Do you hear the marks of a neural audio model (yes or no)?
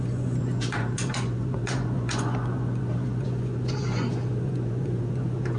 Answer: yes